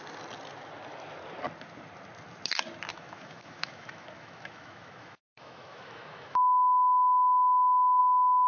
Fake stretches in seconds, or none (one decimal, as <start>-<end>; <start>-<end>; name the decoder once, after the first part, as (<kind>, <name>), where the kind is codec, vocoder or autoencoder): 2.9-8.0 (autoencoder, DAC-VAE)